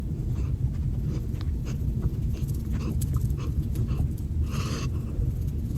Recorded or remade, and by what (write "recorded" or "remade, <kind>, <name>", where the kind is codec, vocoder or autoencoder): recorded